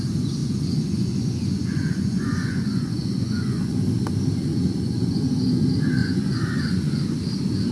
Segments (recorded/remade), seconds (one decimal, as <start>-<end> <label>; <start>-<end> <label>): 0.0-0.4 recorded; 0.4-3.8 remade; 3.8-4.5 recorded; 4.5-5.6 remade; 5.6-6.0 recorded; 6.0-7.0 remade; 7.0-7.7 recorded